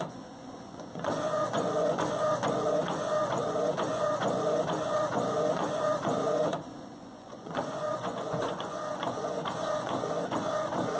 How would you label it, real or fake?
fake